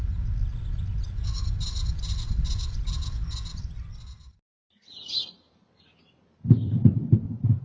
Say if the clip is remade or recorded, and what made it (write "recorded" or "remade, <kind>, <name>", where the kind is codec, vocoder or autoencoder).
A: recorded